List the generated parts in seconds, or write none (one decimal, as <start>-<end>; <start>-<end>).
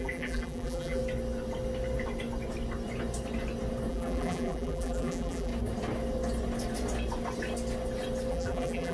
0.0-1.0; 3.9-5.5; 8.3-8.9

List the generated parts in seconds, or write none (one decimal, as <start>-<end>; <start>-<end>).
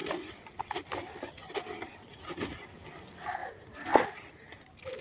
3.4-3.9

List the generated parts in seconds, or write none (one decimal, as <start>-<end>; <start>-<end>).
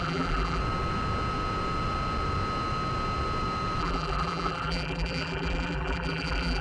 0.0-0.6; 3.8-6.6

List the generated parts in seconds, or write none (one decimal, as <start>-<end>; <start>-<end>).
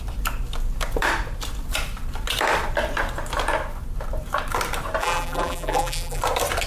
5.0-6.2